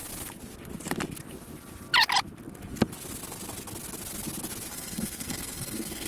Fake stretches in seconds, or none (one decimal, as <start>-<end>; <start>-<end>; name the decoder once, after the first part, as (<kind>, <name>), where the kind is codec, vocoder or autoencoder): 4.7-6.1 (codec, SNAC)